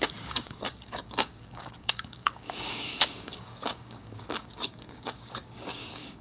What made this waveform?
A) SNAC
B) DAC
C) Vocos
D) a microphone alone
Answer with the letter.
B